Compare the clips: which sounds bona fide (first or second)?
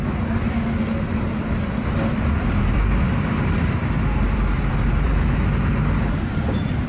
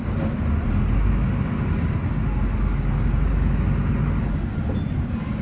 second